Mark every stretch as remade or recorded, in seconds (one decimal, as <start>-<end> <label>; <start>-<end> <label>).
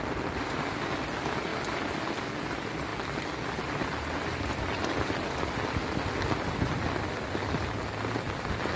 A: 0.0-8.8 recorded